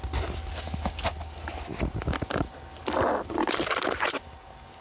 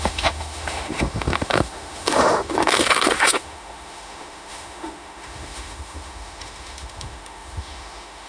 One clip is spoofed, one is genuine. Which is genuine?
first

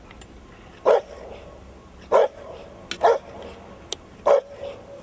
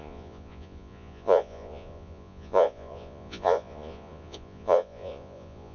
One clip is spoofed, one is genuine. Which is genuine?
first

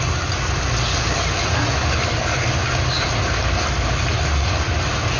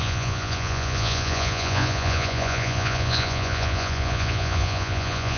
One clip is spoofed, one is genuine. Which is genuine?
first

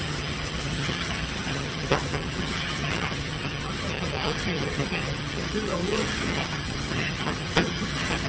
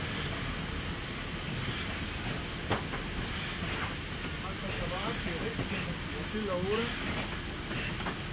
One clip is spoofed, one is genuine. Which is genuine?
second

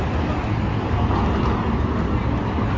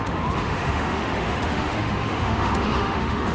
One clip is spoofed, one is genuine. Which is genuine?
first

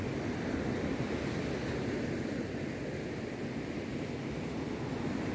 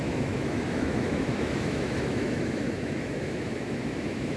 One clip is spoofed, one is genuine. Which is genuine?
first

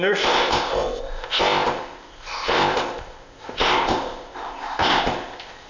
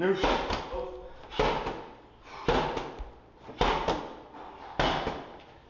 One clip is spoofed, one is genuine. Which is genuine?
second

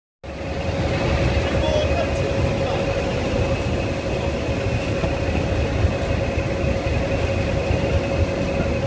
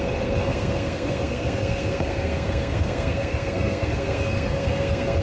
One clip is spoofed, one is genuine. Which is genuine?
first